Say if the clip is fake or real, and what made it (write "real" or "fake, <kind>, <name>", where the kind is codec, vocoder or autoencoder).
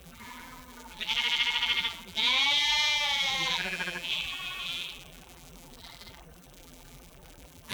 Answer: fake, vocoder, BigVGAN v2